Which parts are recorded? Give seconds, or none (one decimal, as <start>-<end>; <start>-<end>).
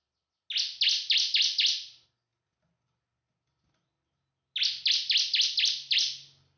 0.0-6.6